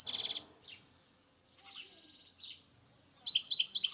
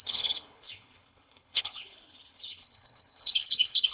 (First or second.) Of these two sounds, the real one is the first